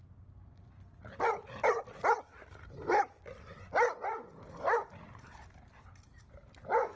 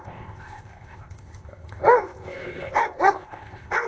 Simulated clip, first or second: second